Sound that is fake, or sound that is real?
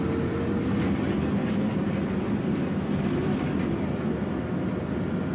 real